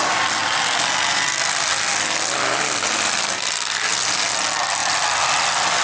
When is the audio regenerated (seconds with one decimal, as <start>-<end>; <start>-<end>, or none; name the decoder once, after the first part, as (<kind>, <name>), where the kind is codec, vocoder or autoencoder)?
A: none